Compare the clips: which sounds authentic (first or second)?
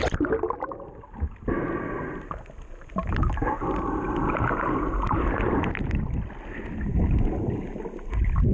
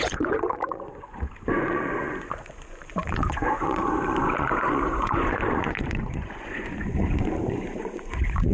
first